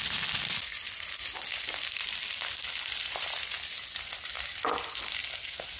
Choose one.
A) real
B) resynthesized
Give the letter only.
A